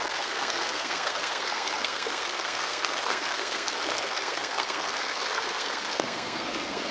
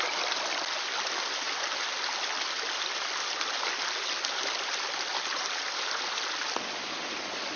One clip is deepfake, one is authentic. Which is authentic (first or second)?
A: second